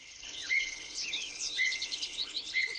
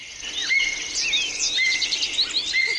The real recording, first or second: second